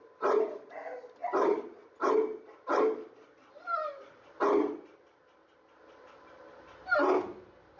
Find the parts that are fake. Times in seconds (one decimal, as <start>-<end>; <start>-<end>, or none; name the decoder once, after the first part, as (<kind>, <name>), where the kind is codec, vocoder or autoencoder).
none